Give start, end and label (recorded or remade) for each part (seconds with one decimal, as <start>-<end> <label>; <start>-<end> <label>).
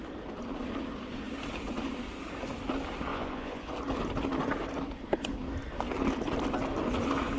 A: 0.0-3.1 recorded; 3.1-3.7 remade; 3.7-7.4 recorded